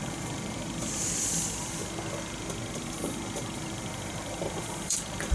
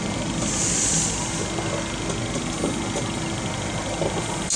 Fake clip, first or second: first